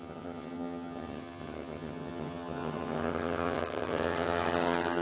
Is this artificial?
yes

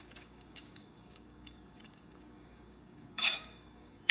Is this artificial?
yes